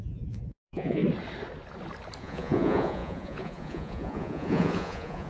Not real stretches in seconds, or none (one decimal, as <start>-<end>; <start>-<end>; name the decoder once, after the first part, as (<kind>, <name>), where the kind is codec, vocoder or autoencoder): 0.0-1.0 (vocoder, Vocos); 2.2-5.3